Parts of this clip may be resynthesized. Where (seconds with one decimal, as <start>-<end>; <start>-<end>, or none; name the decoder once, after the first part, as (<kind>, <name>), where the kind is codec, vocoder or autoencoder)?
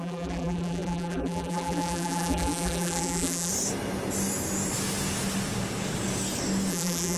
0.0-3.5 (vocoder, BigVGAN v2); 6.7-7.2